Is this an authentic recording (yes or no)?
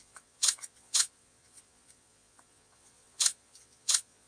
no